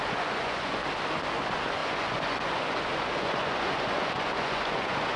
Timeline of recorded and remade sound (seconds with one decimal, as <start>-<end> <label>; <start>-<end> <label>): 0.0-0.8 remade; 0.8-1.4 recorded; 1.4-5.2 remade